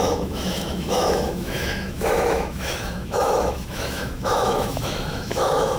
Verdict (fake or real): fake